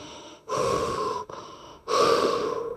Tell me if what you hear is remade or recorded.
remade